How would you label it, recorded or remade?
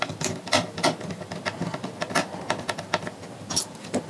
recorded